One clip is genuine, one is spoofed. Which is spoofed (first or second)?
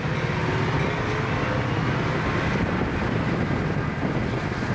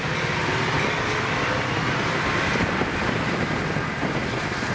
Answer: second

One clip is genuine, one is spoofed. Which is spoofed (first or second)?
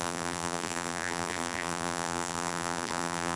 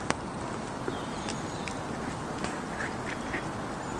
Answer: first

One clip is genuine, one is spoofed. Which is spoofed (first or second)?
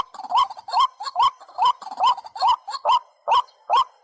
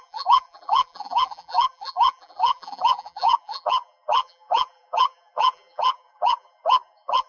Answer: second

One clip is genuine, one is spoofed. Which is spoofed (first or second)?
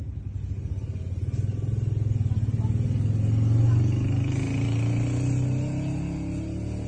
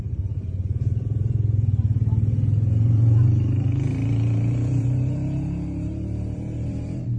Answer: second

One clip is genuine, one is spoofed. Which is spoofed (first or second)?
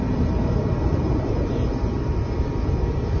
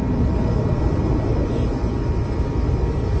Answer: first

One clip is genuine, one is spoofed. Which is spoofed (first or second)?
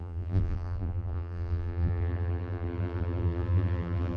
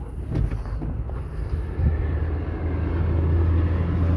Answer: first